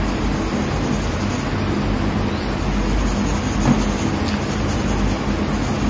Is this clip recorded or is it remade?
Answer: recorded